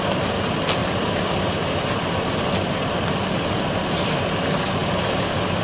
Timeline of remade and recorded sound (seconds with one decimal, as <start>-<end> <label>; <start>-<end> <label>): 0.0-0.8 recorded; 0.8-4.2 remade; 4.2-5.6 recorded